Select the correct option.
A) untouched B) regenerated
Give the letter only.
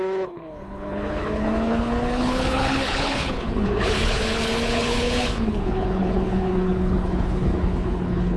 B